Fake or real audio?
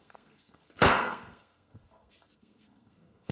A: fake